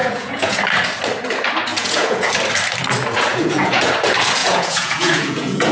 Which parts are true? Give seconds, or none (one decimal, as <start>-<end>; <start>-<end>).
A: 0.6-1.7; 2.3-3.3; 3.9-4.4